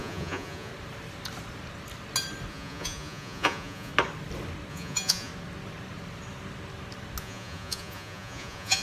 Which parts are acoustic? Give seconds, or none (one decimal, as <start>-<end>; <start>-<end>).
0.7-2.5; 3.9-4.7; 5.3-7.2